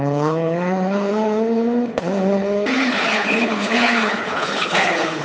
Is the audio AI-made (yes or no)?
yes